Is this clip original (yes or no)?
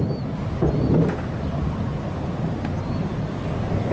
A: yes